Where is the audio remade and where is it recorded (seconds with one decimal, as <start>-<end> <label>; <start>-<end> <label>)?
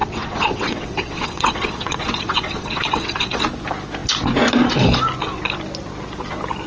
0.0-3.4 remade; 3.4-6.7 recorded